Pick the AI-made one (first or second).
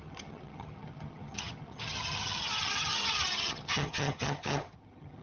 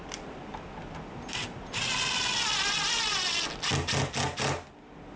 first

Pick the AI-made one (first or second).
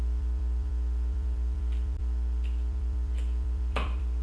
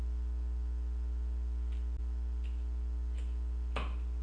first